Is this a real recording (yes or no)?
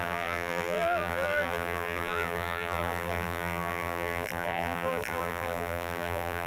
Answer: no